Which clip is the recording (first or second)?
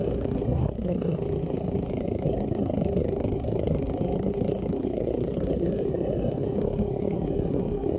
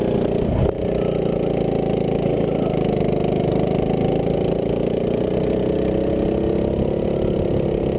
second